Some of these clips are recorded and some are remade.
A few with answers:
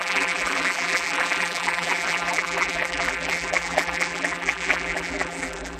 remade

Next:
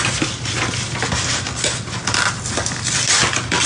recorded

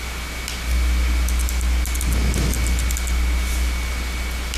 recorded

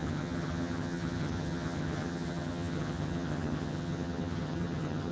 remade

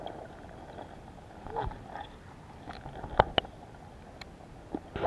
recorded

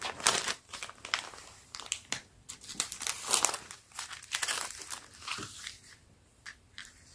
remade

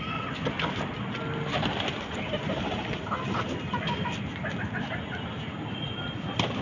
recorded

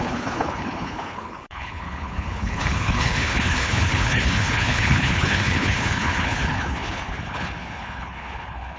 remade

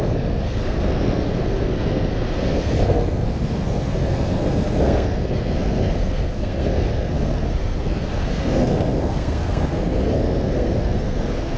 remade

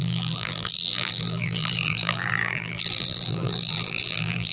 remade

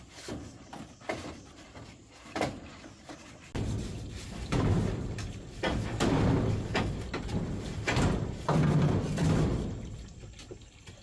recorded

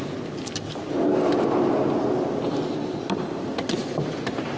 recorded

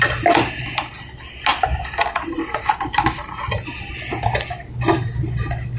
recorded